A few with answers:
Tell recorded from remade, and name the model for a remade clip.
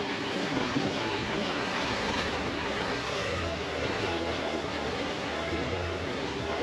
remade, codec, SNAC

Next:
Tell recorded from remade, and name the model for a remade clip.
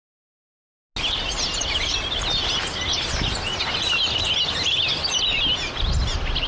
recorded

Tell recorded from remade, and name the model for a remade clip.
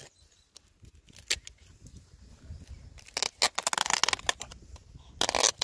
recorded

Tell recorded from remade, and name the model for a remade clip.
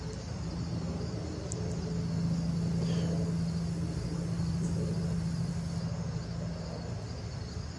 recorded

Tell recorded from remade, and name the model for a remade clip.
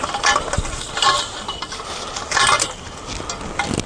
recorded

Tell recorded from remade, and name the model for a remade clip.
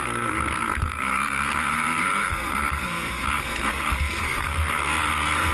remade, codec, SNAC